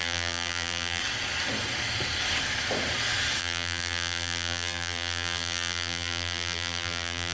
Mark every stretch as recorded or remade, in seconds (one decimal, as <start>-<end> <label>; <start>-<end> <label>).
0.0-1.0 remade; 1.0-3.4 recorded; 3.4-7.3 remade